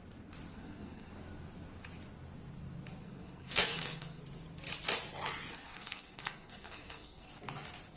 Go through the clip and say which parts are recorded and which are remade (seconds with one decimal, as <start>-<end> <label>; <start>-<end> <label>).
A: 0.0-0.5 recorded; 0.5-1.1 remade; 1.1-3.0 recorded; 3.0-4.2 remade; 4.2-5.5 recorded; 5.5-7.3 remade; 7.3-8.0 recorded